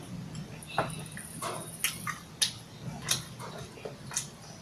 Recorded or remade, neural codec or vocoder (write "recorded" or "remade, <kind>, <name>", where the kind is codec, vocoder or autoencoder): recorded